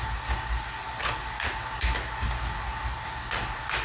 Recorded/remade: recorded